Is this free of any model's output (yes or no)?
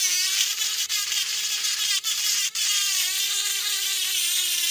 no